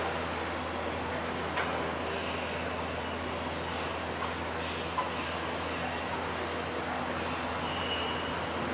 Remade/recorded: recorded